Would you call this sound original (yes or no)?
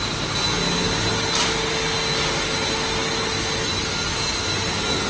yes